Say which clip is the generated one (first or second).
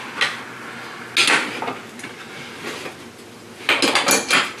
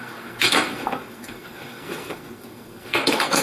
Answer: second